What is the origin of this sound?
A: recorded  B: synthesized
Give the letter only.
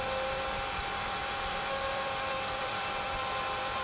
B